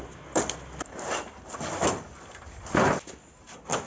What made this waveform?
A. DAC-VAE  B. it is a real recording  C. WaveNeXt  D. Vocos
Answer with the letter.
B